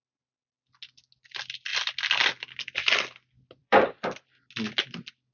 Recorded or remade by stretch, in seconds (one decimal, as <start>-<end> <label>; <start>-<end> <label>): 0.0-3.6 recorded; 3.6-4.5 remade; 4.5-5.3 recorded